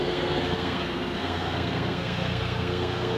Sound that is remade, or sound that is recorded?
remade